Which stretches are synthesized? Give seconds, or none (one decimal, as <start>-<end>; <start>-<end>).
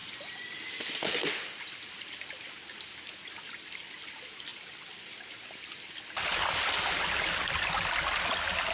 none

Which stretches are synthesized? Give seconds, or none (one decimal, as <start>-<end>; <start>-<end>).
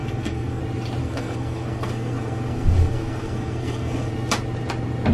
0.0-0.6; 1.0-4.1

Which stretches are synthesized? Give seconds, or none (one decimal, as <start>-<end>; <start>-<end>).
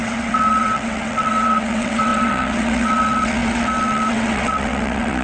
0.0-5.2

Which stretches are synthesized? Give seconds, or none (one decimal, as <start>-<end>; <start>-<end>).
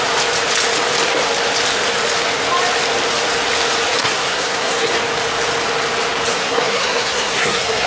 4.0-4.9; 6.3-7.9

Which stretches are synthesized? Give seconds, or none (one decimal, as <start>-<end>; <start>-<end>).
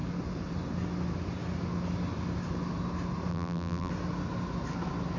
3.3-3.9